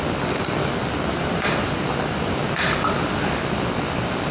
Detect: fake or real real